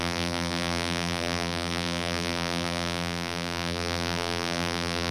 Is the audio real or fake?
fake